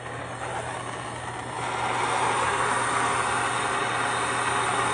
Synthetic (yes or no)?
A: no